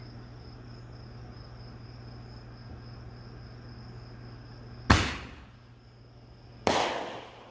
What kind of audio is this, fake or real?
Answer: real